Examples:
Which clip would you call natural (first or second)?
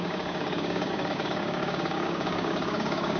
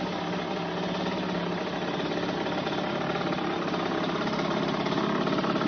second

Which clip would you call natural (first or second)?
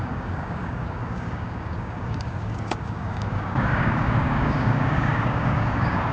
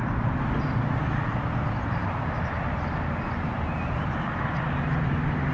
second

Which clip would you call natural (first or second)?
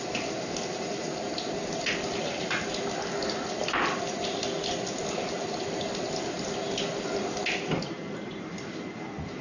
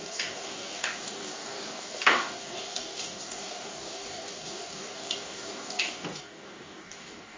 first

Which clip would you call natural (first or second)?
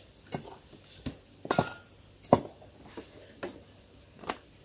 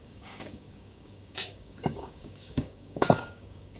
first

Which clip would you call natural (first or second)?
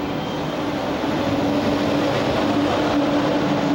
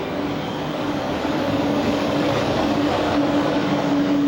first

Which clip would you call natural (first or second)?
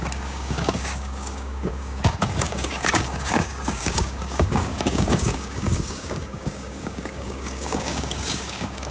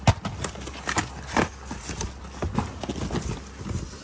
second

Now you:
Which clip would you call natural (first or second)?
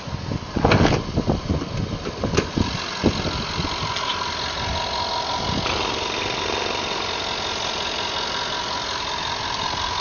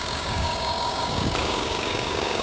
first